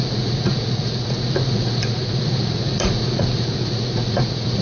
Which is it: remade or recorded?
remade